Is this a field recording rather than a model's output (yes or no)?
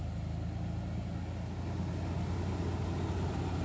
yes